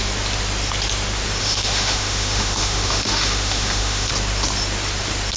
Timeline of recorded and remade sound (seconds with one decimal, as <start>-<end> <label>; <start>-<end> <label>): 0.0-1.4 recorded; 1.4-4.1 remade; 4.1-5.4 recorded